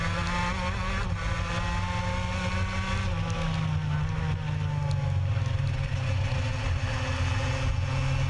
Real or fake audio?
real